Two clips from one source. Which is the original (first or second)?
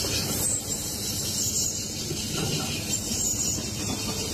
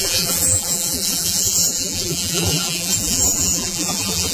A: first